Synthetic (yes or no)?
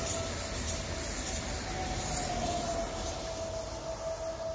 no